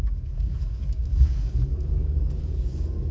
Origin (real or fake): fake